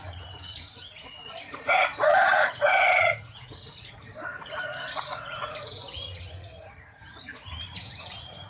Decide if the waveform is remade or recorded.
remade